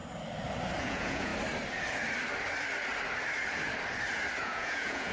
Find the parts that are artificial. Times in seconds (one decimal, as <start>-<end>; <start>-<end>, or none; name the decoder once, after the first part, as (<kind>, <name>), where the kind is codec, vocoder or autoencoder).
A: 0.8-1.3 (vocoder, Vocos); 4.4-5.1